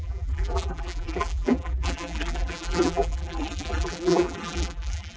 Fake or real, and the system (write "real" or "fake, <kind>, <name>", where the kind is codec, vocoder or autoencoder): fake, vocoder, BigVGAN v2